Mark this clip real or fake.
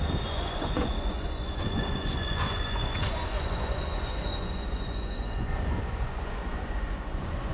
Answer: fake